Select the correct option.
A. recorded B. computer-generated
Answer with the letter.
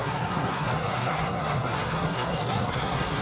B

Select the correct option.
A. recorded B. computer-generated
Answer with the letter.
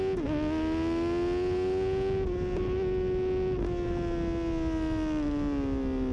A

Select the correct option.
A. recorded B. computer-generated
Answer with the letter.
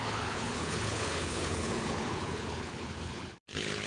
B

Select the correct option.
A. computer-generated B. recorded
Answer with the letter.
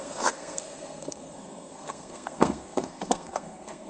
A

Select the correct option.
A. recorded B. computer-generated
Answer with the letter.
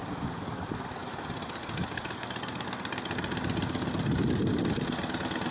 A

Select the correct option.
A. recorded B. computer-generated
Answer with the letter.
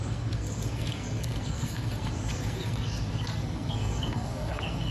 B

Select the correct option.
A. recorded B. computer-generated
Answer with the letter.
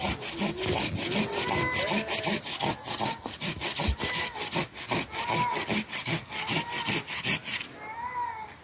A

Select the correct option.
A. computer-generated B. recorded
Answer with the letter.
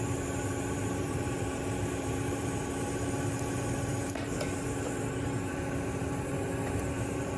A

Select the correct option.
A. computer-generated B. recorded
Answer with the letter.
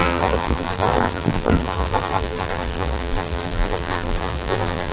A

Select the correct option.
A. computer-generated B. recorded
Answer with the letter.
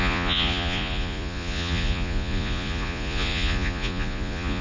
A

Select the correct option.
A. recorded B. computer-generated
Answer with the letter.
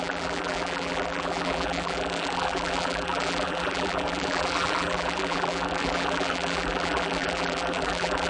B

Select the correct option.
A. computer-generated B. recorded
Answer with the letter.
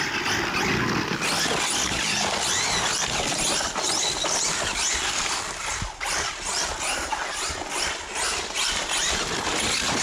B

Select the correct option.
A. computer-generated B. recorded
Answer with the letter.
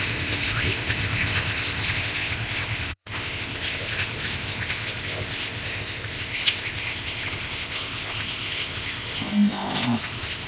A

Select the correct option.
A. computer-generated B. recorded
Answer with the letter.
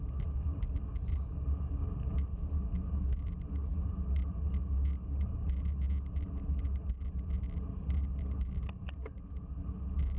B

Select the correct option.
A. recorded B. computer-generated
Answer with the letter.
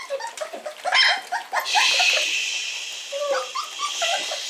A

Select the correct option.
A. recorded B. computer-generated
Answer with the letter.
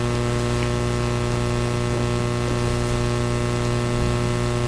A